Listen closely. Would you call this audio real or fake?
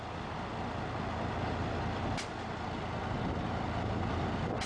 real